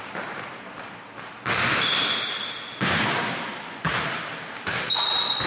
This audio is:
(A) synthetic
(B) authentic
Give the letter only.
B